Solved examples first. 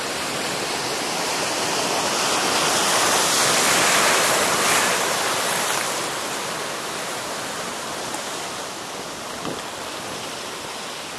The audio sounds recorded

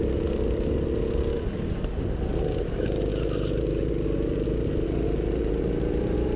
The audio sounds recorded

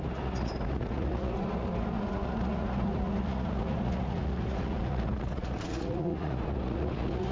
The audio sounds remade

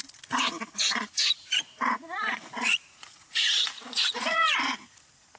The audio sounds remade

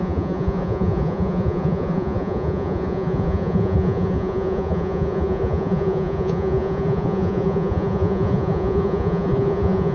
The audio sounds remade